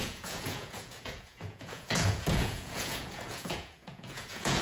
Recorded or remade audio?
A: remade